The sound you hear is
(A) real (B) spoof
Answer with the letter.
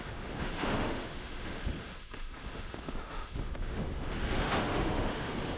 B